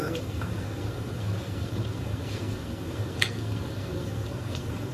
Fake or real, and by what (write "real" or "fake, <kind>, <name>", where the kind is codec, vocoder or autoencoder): fake, codec, SNAC